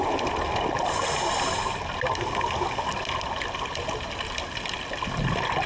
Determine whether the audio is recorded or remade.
recorded